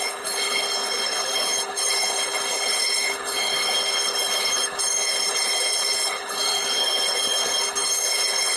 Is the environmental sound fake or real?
fake